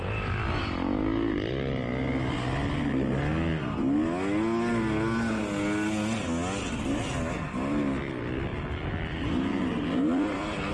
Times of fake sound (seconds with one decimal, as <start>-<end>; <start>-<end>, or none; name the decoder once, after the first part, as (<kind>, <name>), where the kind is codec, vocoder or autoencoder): 8.5-10.7 (vocoder, BigVGAN v2)